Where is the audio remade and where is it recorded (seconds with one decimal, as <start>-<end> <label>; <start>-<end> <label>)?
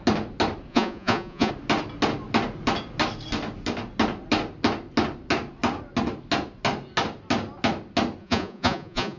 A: 0.0-0.7 recorded; 0.7-1.5 remade; 1.5-8.2 recorded; 8.2-9.2 remade